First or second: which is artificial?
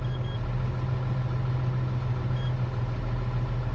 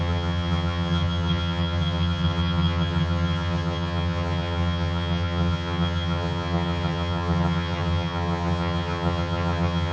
second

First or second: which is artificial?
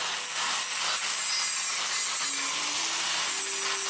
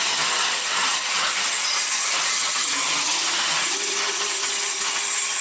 second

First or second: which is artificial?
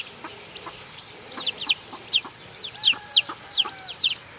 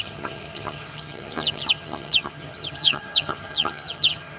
second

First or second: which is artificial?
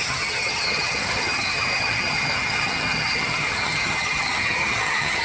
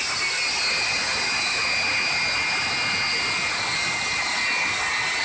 first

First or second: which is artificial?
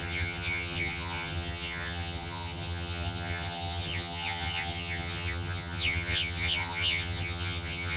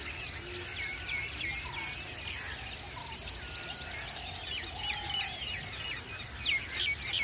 first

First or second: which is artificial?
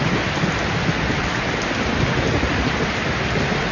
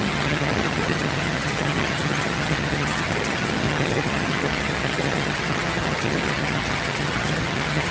second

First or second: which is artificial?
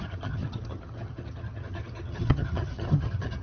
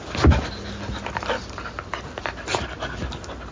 first